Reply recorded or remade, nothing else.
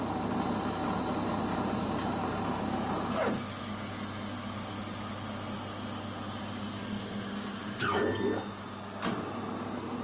recorded